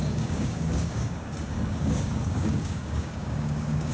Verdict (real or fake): fake